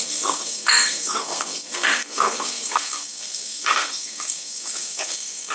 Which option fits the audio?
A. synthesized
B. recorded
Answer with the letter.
A